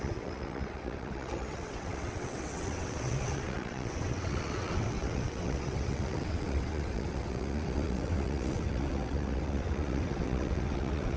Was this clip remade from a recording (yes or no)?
yes